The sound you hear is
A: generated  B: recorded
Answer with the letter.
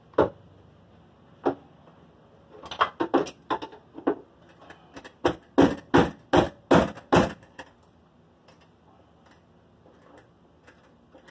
B